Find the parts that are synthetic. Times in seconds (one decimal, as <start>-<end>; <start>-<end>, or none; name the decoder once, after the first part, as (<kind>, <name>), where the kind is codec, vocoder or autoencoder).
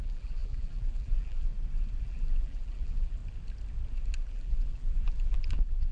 0.0-1.5 (vocoder, BigVGAN v2); 2.0-3.2; 4.3-5.9